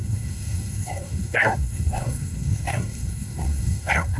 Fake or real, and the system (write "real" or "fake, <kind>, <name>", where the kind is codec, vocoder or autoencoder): fake, codec, SNAC